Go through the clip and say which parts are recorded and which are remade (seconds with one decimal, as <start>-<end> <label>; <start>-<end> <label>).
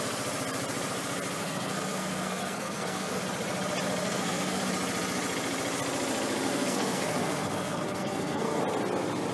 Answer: 0.0-1.4 recorded; 1.4-3.2 remade; 3.2-4.0 recorded; 4.0-4.6 remade; 4.6-6.5 recorded; 6.5-8.6 remade; 8.6-9.3 recorded